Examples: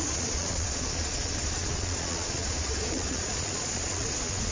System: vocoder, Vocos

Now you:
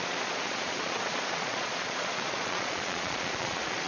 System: vocoder, Vocos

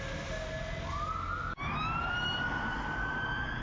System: none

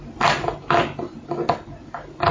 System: none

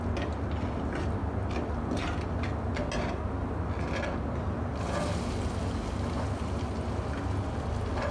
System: none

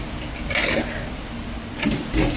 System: none